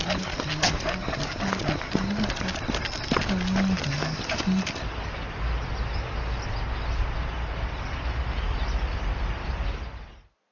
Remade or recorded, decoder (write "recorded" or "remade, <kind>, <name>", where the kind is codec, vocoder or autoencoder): recorded